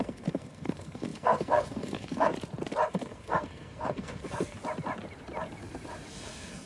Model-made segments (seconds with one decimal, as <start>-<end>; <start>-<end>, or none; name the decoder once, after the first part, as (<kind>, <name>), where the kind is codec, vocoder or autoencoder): 0.0-2.3 (codec, SNAC); 2.9-4.6; 6.1-6.7